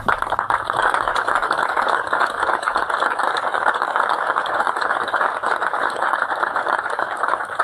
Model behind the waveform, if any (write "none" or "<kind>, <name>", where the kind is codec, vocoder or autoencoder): codec, DAC